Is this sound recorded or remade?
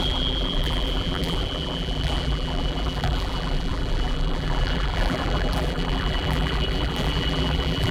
remade